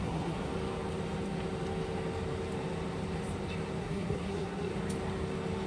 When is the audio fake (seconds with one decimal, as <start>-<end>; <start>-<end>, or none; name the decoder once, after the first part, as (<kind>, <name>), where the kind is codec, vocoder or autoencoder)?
0.0-0.5 (codec, SNAC); 3.8-4.7

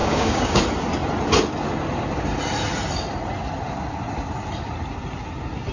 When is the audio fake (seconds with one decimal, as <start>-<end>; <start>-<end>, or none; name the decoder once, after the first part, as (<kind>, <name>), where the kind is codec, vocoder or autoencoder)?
0.0-0.6 (codec, DAC)

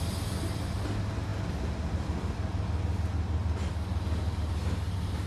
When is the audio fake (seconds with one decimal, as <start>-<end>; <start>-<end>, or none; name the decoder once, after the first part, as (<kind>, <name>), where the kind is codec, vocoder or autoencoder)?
none

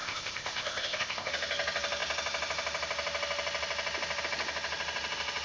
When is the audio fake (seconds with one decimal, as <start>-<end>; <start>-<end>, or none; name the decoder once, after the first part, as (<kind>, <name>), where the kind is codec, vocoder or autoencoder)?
0.0-1.3 (codec, ZipCodec)

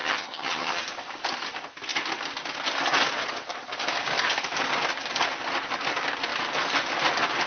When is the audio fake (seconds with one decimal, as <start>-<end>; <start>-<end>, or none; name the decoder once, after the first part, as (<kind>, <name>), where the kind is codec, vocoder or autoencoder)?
0.0-0.8 (vocoder, HiFi-GAN)

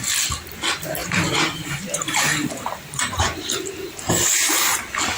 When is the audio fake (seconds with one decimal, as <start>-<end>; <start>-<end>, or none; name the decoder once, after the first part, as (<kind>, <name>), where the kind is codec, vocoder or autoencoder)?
1.0-4.1 (vocoder, BigVGAN v2)

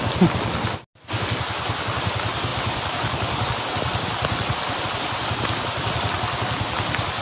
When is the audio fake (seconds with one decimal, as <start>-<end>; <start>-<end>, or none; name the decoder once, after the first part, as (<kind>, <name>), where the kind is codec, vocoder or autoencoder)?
2.5-4.8 (vocoder, BigVGAN v2)